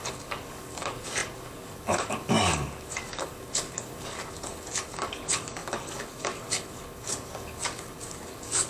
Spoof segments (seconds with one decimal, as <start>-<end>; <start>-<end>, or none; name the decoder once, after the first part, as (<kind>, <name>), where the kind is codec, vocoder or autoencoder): 0.0-8.7 (codec, DAC)